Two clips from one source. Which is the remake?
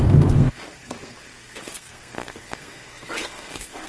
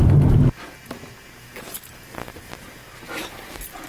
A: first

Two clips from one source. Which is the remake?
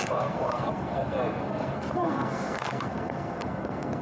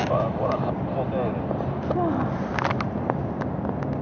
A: first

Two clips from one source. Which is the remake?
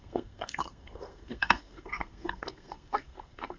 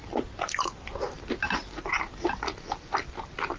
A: first